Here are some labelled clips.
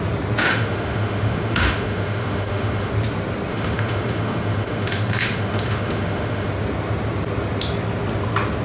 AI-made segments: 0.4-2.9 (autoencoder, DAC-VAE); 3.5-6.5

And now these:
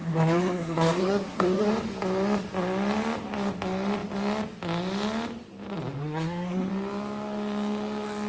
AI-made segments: 0.0-1.7 (codec, SNAC); 6.0-6.7

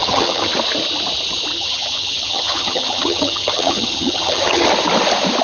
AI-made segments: 0.0-0.5 (vocoder, HiFi-GAN); 1.5-4.7

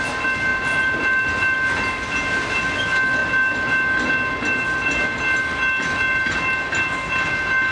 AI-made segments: none

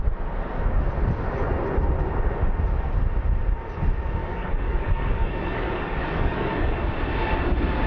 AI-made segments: 4.2-6.8 (codec, DAC)